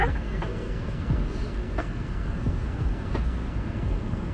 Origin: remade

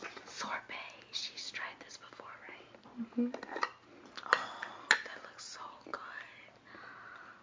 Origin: recorded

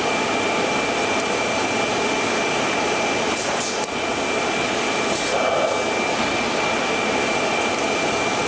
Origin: recorded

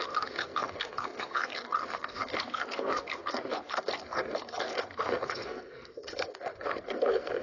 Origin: remade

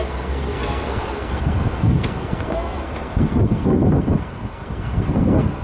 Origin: remade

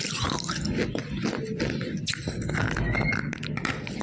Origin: recorded